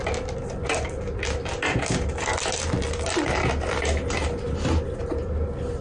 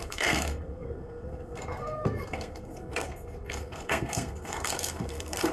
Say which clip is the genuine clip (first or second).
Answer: first